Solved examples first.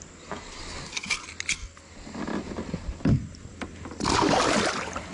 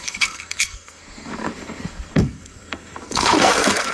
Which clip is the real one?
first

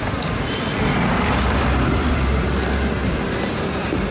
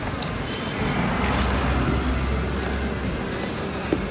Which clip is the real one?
second